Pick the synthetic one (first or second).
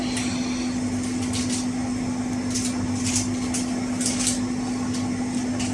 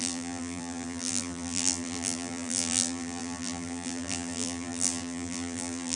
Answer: second